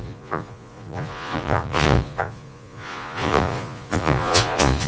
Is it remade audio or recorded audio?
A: remade